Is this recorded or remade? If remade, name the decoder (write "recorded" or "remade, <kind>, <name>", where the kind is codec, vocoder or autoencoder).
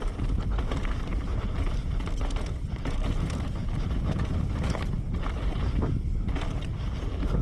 recorded